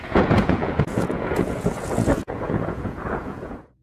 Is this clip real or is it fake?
fake